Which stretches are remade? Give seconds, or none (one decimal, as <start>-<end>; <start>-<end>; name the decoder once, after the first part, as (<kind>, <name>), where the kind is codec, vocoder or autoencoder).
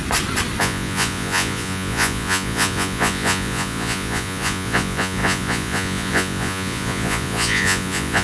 0.6-8.2 (vocoder, Vocos)